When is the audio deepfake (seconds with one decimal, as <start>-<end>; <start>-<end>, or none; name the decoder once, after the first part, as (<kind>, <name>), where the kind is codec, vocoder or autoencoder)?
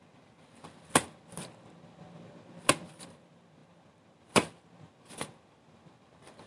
none